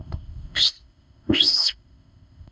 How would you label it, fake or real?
fake